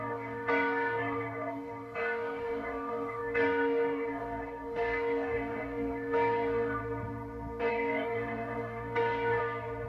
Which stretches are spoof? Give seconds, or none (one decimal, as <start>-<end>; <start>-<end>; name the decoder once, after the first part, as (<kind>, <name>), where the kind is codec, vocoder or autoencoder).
0.0-6.8 (codec, DAC); 7.7-9.4